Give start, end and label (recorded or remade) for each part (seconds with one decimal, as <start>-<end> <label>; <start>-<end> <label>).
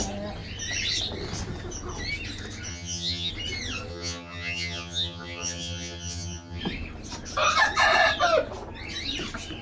0.0-2.7 recorded; 2.7-3.3 remade; 3.3-3.9 recorded; 3.9-6.6 remade; 6.6-9.6 recorded